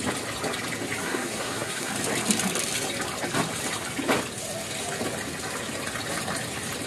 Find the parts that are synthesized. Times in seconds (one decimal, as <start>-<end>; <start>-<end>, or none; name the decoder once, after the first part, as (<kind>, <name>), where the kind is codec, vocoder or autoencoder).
1.0-1.9 (codec, SNAC)